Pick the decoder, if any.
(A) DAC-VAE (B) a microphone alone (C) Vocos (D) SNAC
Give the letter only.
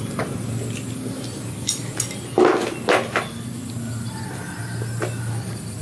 B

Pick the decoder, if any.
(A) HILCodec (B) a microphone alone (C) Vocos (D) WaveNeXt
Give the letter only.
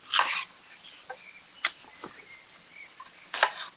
B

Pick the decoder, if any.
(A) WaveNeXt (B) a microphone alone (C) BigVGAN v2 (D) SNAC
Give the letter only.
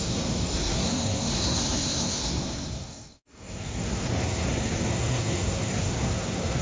D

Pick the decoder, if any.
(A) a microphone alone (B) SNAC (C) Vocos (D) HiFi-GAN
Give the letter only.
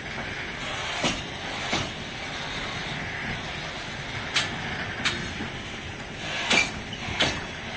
A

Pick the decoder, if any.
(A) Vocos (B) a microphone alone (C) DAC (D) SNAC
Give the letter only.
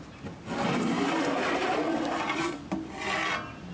B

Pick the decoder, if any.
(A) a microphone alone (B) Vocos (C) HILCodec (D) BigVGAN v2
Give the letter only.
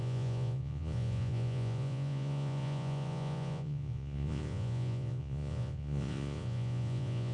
B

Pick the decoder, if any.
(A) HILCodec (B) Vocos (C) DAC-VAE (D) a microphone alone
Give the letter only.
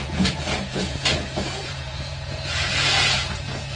B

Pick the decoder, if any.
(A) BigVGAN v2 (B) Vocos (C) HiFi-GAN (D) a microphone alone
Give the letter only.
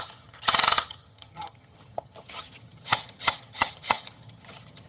C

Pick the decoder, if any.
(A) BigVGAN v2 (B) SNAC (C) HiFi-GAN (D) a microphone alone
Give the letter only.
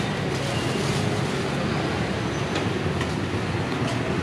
D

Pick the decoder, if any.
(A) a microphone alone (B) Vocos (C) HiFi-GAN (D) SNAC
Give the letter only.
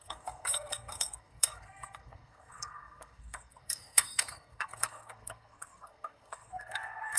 D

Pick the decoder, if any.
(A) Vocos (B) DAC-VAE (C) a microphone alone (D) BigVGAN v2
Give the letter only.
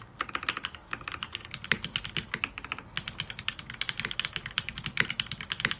C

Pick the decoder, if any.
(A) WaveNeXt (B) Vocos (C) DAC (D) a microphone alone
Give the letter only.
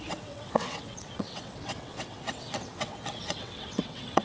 A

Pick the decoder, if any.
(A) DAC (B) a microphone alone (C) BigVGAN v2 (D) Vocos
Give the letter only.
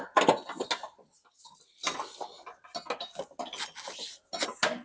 B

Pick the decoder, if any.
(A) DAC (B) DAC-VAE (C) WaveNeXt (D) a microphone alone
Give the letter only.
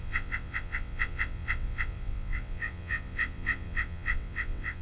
C